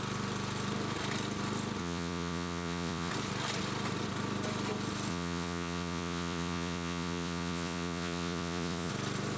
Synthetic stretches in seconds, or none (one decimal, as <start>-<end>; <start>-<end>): 1.8-3.1; 5.1-8.9